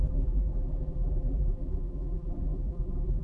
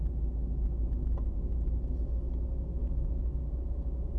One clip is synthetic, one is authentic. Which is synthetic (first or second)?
first